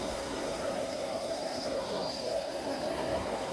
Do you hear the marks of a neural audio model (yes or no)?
yes